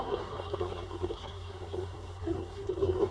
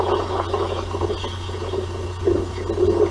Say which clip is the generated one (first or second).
first